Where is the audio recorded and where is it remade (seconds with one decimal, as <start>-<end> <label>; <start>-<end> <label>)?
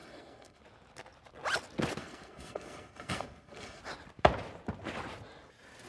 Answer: 0.0-0.6 remade; 0.6-2.0 recorded; 2.0-3.8 remade; 3.8-5.9 recorded